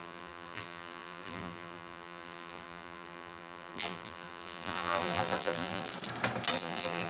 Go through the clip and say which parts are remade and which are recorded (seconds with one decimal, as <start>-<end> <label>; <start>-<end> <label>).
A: 0.0-5.9 remade; 5.9-6.5 recorded; 6.5-7.1 remade